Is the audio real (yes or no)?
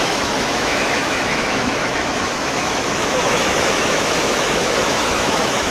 no